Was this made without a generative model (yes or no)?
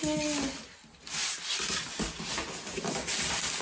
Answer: yes